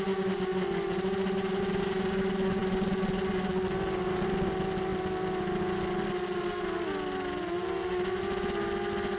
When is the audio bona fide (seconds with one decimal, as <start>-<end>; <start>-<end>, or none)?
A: 0.0-9.2